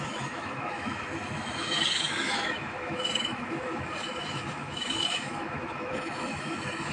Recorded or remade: remade